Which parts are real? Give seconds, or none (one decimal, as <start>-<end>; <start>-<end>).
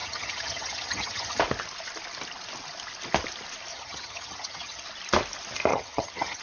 1.4-3.7; 4.8-5.7